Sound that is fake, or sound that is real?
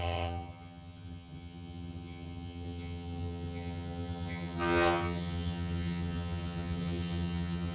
fake